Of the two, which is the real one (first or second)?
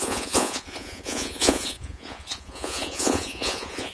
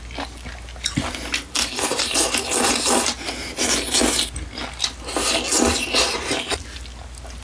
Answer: second